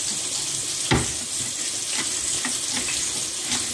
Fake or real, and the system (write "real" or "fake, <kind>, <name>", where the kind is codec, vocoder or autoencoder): real